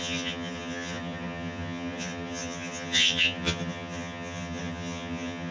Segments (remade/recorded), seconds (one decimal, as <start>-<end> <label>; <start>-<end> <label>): 0.0-5.5 remade